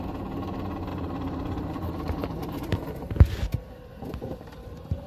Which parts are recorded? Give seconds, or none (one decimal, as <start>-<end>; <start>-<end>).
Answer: 0.0-0.9; 2.6-3.9